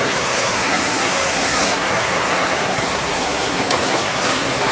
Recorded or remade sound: remade